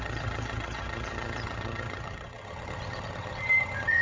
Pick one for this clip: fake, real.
fake